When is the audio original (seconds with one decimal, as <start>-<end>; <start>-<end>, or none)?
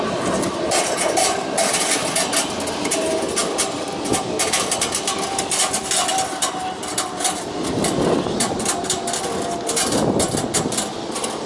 0.0-11.5